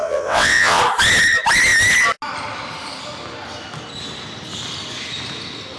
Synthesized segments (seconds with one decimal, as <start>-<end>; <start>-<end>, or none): 0.0-0.8